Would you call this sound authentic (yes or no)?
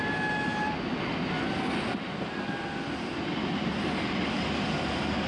yes